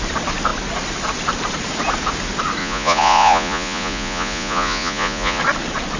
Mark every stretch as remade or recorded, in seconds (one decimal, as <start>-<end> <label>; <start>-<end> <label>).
0.0-2.6 recorded; 2.6-5.4 remade; 5.4-6.0 recorded